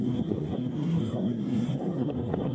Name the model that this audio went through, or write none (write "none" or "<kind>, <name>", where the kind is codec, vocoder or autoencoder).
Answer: codec, SNAC